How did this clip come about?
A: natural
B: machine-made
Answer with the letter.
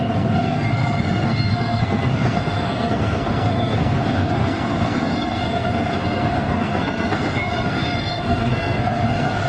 B